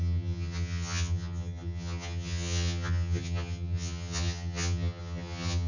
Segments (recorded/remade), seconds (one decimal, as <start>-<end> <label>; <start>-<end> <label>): 0.0-5.7 remade